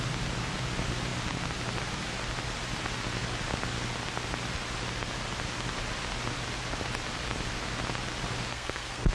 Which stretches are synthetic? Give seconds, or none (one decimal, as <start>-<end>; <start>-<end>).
8.5-9.1

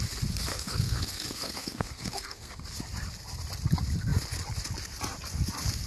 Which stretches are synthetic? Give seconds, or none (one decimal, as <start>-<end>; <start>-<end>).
0.5-2.5

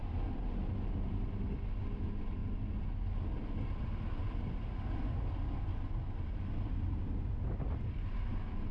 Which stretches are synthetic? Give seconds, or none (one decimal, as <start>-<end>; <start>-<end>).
none

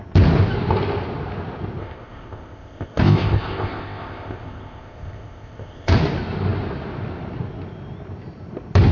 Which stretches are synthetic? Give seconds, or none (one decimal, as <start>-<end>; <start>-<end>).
1.8-5.9

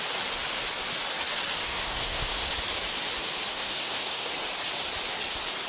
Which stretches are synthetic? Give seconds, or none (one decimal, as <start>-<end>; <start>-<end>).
1.6-2.5; 3.5-4.3

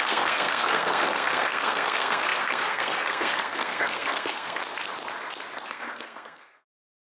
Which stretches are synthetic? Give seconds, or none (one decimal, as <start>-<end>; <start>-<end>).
0.0-4.6; 5.7-7.0

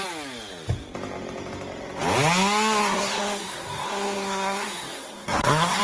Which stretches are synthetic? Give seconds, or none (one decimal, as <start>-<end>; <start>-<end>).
2.8-5.8

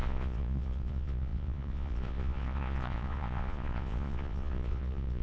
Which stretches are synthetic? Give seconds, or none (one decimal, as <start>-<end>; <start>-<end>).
0.0-5.2